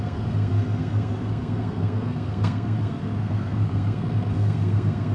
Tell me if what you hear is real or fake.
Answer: fake